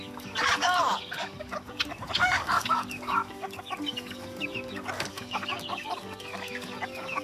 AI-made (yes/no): yes